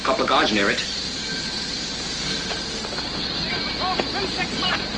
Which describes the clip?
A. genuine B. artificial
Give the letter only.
A